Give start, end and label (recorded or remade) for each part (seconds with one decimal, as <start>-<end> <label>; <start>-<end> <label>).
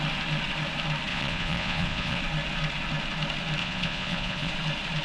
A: 0.0-1.1 recorded; 1.1-2.2 remade; 2.2-3.6 recorded; 3.6-4.5 remade; 4.5-5.0 recorded